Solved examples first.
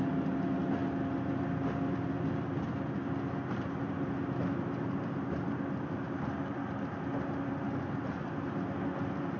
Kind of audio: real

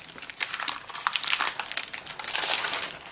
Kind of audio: real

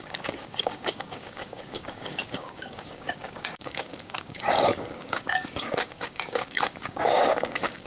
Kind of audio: fake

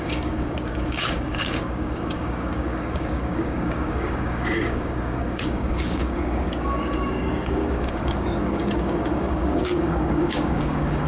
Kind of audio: fake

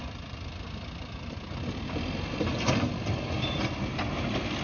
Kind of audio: real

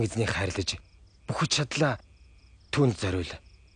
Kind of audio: real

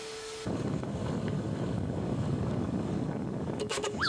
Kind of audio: fake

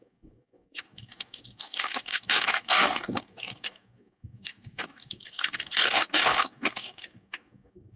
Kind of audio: fake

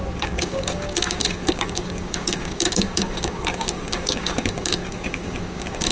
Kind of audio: fake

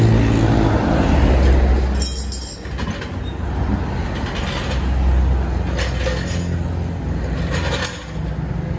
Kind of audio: real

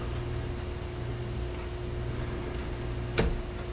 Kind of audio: real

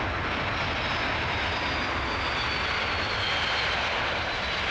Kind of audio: real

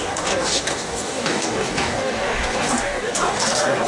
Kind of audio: fake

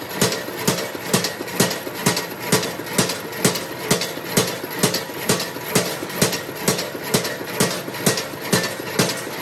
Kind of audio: real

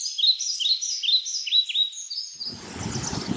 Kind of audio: real